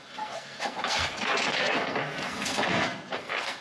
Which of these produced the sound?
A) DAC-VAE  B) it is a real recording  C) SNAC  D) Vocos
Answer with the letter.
C